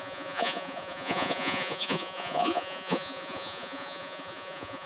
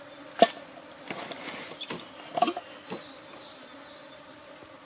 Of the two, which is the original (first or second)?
second